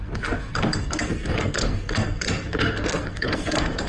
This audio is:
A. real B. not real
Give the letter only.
B